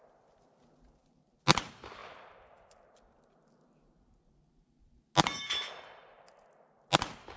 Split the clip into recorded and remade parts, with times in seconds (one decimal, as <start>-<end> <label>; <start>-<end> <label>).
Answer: 0.0-7.4 recorded